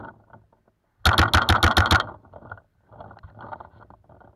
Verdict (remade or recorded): recorded